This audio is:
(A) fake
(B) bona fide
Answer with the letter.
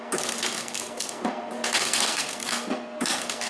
A